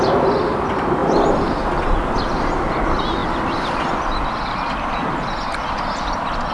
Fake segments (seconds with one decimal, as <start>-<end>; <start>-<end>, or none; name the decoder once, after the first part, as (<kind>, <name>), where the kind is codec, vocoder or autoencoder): none